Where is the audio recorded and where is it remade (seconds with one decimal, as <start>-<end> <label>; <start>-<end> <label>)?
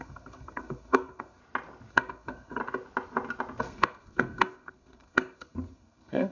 0.0-1.4 remade; 1.4-1.9 recorded; 1.9-2.6 remade; 2.6-3.6 recorded; 3.6-6.3 remade